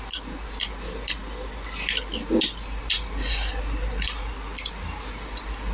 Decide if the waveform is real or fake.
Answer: real